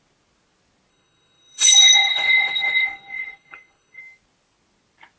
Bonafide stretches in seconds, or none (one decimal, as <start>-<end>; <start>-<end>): 0.0-0.9; 4.0-5.2